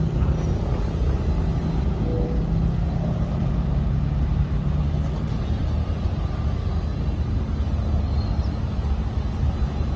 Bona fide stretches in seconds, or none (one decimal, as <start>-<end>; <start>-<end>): 0.0-10.0